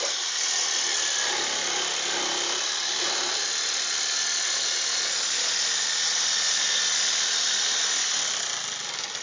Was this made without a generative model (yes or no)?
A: yes